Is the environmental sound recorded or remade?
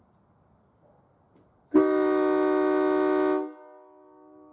recorded